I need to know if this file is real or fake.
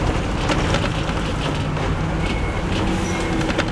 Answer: real